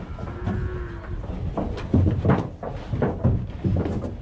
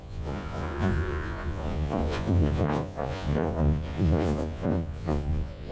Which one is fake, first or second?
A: second